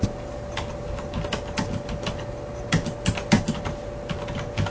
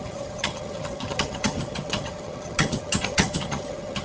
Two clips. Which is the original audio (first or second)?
first